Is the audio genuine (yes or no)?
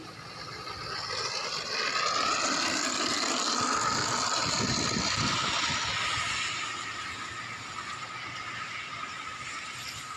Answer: yes